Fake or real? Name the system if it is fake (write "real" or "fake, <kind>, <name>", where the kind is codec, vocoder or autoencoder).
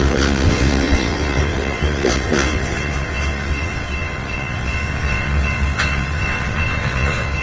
fake, vocoder, WaveNeXt